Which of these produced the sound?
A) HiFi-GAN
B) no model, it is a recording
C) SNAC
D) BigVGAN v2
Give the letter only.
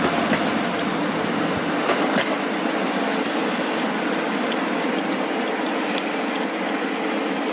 B